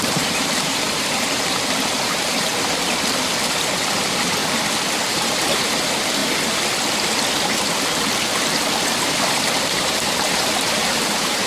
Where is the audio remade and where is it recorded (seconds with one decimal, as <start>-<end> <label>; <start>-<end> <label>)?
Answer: 0.0-2.5 remade; 2.5-3.6 recorded; 3.6-4.4 remade; 4.4-4.9 recorded; 4.9-6.2 remade; 6.2-9.1 recorded; 9.1-11.5 remade